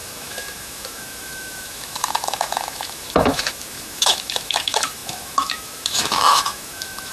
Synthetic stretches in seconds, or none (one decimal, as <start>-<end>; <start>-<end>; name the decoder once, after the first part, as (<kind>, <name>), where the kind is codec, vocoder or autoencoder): 0.0-7.1 (autoencoder, DAC-VAE)